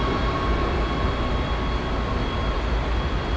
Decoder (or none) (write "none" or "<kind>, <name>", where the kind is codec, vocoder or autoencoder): none